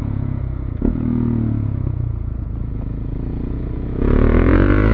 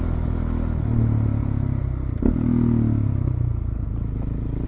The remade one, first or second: first